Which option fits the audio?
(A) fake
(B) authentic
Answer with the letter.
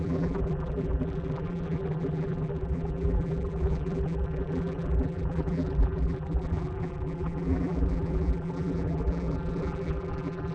A